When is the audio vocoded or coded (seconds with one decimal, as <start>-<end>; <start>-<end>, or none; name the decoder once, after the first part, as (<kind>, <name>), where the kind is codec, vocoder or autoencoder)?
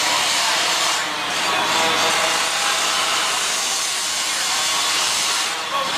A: 0.0-1.4 (vocoder, BigVGAN v2); 3.0-6.0